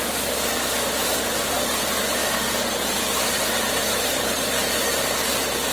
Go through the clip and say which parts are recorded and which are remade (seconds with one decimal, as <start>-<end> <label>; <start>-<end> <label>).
0.0-5.7 recorded